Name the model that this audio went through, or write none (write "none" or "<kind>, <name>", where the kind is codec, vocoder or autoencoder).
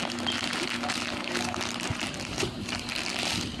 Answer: none